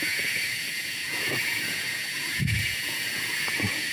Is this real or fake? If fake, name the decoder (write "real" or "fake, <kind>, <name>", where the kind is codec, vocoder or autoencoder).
fake, vocoder, Vocos